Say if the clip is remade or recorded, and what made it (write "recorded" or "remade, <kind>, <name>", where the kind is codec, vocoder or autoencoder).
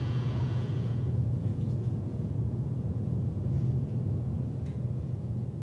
remade, vocoder, Vocos